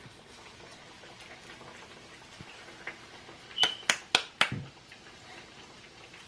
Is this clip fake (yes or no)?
no